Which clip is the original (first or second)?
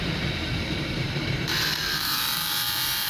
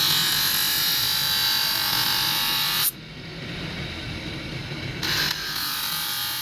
second